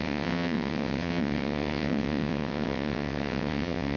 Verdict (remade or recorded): remade